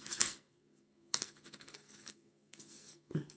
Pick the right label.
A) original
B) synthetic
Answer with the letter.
B